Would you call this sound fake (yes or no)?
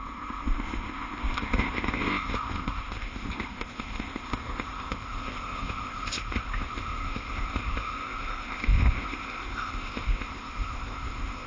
yes